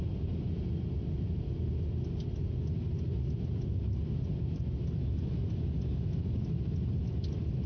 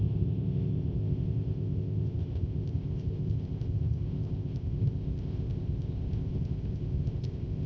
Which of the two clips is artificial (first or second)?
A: second